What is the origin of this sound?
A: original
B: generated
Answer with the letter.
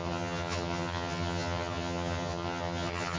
B